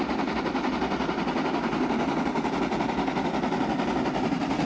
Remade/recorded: recorded